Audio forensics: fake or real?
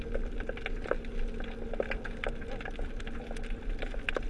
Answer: real